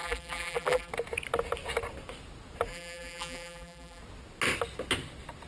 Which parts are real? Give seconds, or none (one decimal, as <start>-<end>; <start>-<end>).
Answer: 0.9-2.7; 4.0-5.5